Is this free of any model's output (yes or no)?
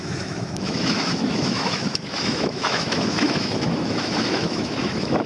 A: no